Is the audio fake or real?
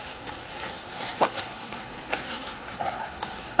fake